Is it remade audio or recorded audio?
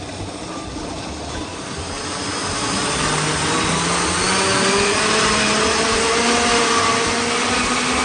recorded